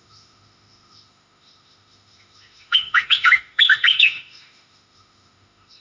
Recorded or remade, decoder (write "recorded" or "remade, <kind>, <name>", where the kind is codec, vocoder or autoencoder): remade, autoencoder, DAC-VAE